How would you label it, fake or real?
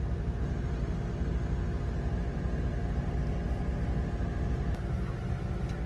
real